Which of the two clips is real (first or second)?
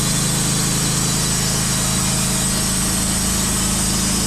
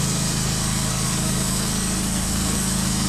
first